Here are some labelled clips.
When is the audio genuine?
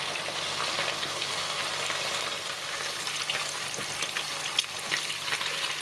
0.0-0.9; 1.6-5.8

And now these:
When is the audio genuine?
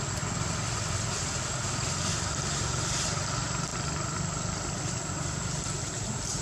0.0-6.4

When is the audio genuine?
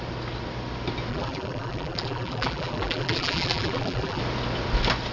0.0-1.1; 4.2-5.1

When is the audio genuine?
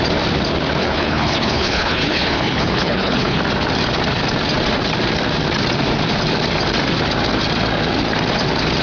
0.0-0.8; 3.4-8.8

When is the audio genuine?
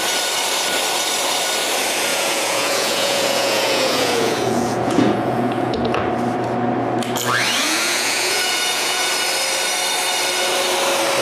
0.0-2.1; 6.0-7.6; 9.1-11.2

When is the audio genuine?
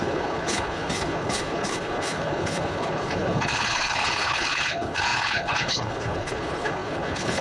none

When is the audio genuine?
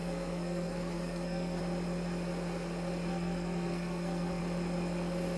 1.6-3.1; 4.4-5.4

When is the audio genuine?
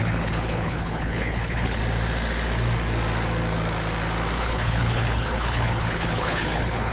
1.8-4.4